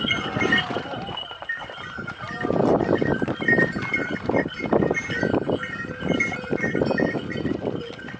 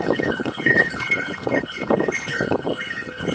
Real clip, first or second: first